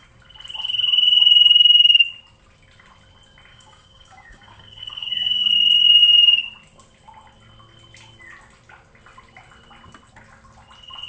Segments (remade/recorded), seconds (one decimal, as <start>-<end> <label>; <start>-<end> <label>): 0.0-3.5 recorded; 3.5-5.5 remade; 5.5-11.1 recorded